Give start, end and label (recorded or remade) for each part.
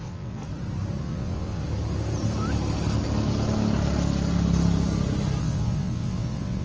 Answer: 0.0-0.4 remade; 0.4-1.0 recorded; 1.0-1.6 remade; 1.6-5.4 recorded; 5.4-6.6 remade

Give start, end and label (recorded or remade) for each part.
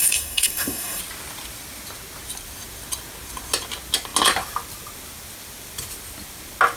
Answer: 0.0-1.0 remade; 1.0-6.8 recorded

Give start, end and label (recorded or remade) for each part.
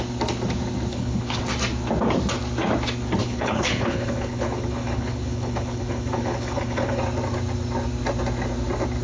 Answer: 0.0-0.9 recorded; 0.9-1.4 remade; 1.4-3.2 recorded; 3.2-7.0 remade; 7.0-9.0 recorded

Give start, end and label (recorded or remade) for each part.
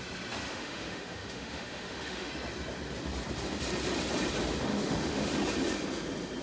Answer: 0.0-0.5 recorded; 0.5-2.3 remade; 2.3-4.7 recorded; 4.7-5.3 remade; 5.3-6.4 recorded